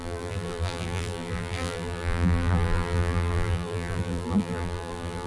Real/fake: fake